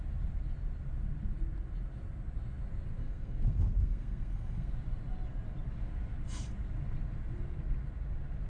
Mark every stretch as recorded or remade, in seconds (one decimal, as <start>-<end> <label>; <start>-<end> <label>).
0.0-3.0 recorded; 3.0-4.7 remade; 4.7-8.5 recorded